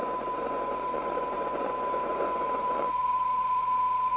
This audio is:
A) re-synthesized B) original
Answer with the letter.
A